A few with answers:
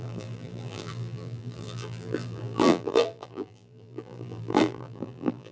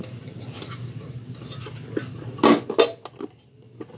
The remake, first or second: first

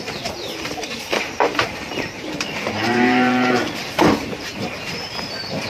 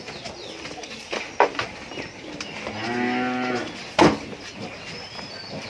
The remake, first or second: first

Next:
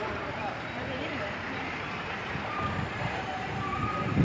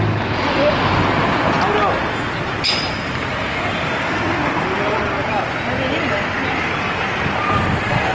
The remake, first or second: first